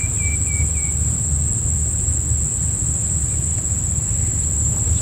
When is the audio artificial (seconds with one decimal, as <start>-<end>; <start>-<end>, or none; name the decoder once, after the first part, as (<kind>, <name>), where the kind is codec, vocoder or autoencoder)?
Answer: 3.0-3.5 (vocoder, BigVGAN v2); 4.6-5.0